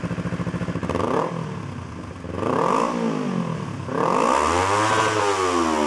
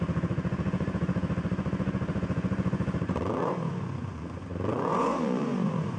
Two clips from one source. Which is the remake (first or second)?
second